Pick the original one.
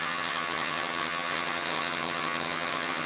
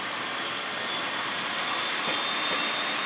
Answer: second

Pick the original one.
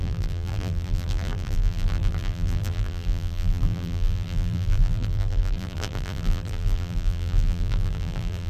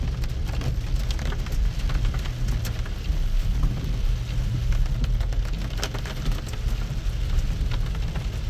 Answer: second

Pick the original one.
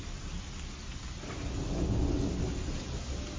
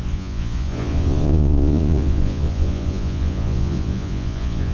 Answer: first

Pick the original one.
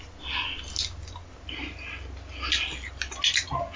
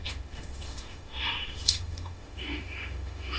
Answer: first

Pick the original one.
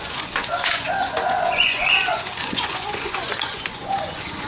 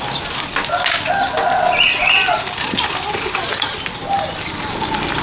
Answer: second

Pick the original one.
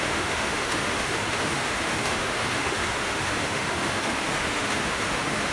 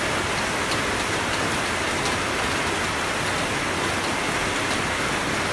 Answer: second